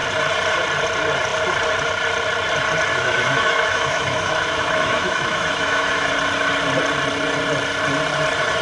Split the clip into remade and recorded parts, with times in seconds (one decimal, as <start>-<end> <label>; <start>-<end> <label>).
0.0-2.9 recorded; 2.9-6.1 remade; 6.1-8.6 recorded